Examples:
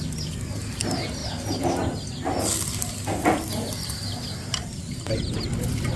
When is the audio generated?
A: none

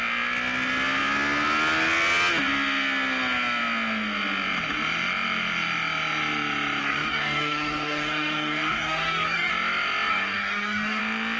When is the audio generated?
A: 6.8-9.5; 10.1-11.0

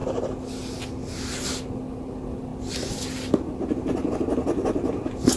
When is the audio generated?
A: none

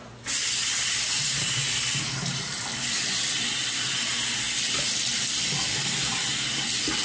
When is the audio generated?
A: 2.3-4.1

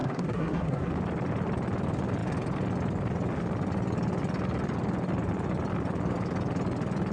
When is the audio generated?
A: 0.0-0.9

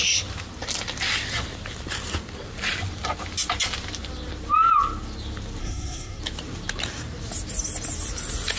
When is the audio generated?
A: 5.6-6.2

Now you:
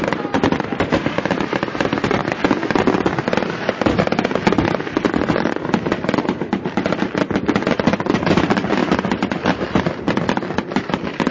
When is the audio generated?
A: 0.0-2.2; 6.2-11.3